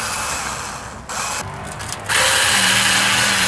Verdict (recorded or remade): recorded